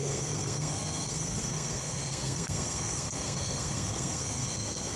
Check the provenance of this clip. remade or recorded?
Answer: remade